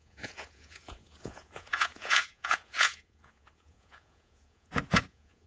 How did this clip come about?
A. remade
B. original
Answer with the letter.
A